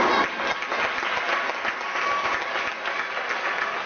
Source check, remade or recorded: recorded